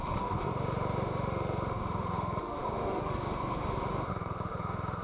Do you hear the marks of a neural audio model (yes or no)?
yes